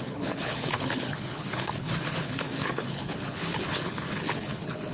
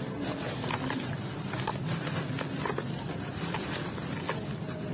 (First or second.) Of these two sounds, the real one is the second